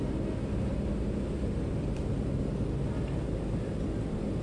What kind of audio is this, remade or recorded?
recorded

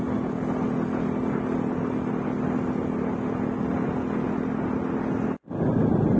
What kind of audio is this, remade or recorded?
recorded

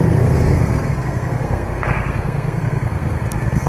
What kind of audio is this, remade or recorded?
remade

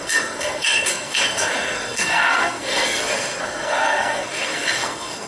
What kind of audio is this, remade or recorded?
remade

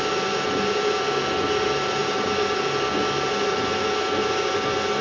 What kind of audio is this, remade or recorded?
recorded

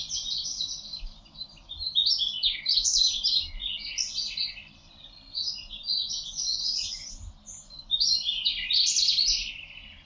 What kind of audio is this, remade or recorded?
recorded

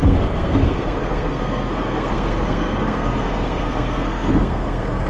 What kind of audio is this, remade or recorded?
remade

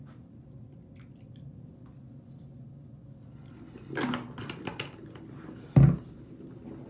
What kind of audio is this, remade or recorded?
recorded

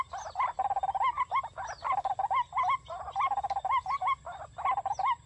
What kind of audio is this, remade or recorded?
recorded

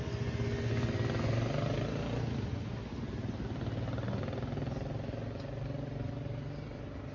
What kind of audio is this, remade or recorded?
recorded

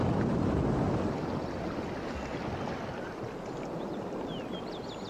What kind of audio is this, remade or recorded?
recorded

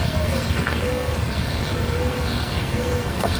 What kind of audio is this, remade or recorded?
remade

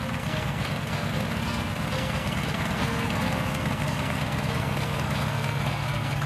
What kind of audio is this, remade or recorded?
remade